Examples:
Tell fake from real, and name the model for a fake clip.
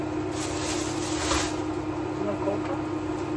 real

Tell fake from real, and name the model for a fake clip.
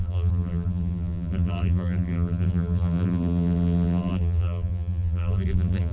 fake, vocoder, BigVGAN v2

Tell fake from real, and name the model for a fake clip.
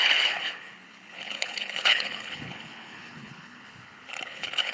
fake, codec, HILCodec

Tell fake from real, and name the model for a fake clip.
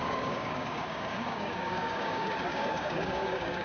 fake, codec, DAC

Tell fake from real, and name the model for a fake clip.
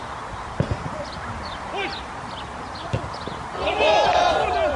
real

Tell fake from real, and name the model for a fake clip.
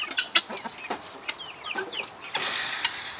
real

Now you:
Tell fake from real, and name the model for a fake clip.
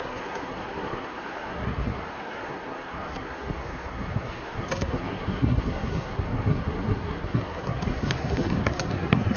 fake, codec, SNAC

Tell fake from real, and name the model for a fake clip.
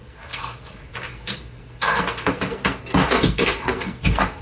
fake, codec, SNAC